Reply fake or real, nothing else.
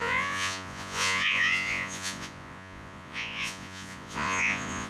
fake